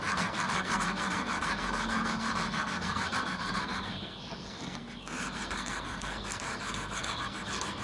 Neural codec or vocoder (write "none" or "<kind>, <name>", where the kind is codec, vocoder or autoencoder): codec, SNAC